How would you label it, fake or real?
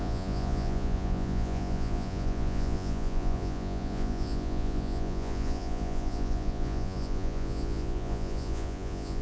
fake